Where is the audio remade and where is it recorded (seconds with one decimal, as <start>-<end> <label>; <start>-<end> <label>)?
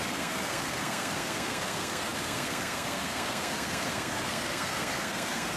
0.0-5.6 remade